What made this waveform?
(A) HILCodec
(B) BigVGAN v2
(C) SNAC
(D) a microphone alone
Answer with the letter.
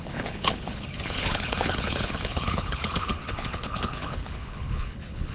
A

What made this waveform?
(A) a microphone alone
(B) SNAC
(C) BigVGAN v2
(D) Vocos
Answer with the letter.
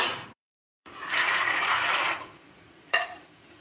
D